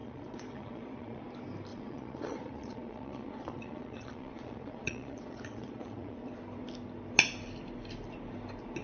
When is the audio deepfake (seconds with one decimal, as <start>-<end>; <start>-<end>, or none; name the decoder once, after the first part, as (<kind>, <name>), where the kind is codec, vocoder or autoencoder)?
0.0-1.2 (vocoder, Vocos); 1.7-6.2